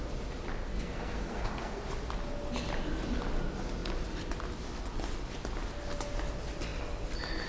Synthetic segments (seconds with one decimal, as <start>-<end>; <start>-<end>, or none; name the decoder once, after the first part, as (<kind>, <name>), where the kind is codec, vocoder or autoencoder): 0.7-1.8 (codec, SNAC)